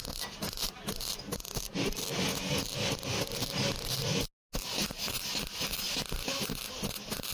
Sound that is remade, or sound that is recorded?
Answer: recorded